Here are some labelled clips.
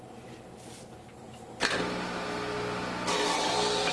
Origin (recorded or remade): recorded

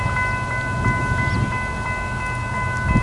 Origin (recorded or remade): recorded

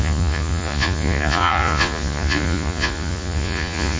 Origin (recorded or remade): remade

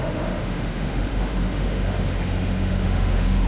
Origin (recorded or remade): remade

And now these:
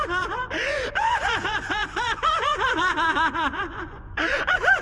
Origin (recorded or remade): remade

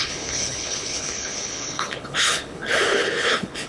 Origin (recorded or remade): remade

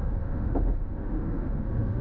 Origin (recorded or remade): remade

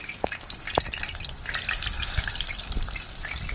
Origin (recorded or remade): recorded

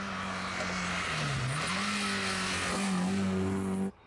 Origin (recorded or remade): recorded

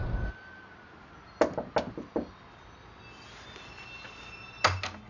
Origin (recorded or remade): recorded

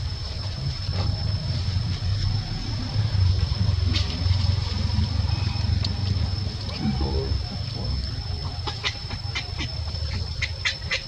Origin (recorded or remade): recorded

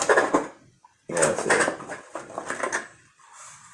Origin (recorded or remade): recorded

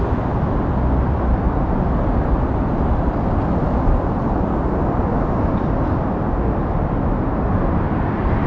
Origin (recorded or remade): recorded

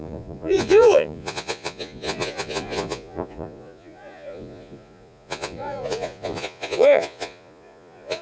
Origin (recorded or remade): remade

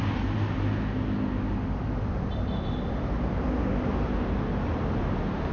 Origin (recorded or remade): recorded